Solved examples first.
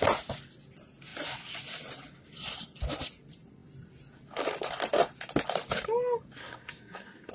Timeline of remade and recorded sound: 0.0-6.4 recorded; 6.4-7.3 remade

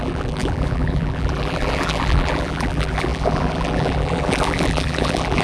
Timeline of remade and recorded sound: 0.0-5.4 remade

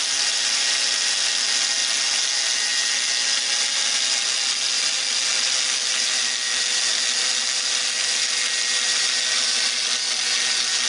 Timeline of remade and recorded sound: 0.0-10.9 recorded

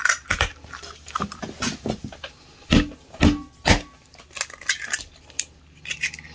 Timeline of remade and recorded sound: 0.0-1.4 remade; 1.4-6.3 recorded

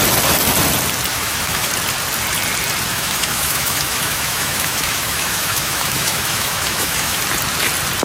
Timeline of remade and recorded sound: 0.0-1.1 recorded; 1.1-1.7 remade; 1.7-2.9 recorded; 2.9-7.2 remade; 7.2-8.0 recorded

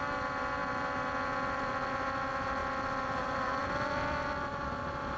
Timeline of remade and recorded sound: 0.0-5.2 recorded

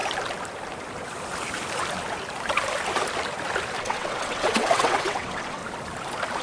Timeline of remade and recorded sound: 0.0-3.8 recorded; 3.8-5.6 remade; 5.6-6.4 recorded

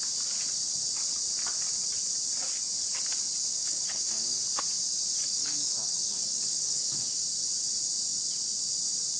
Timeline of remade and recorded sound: 0.0-3.5 recorded; 3.5-4.4 remade; 4.4-5.2 recorded; 5.2-7.2 remade; 7.2-9.2 recorded